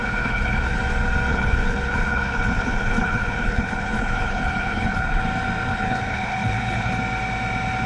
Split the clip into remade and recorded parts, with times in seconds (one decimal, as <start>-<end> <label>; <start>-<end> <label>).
0.0-0.8 remade; 0.8-1.3 recorded; 1.3-5.2 remade; 5.2-5.7 recorded; 5.7-6.9 remade; 6.9-7.9 recorded